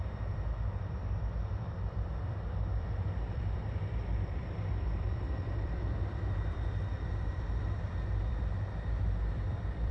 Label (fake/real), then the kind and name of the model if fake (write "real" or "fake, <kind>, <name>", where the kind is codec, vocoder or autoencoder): fake, vocoder, BigVGAN v2